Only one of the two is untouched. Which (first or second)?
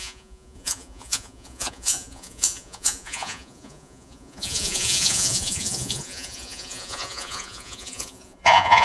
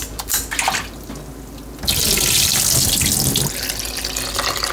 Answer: second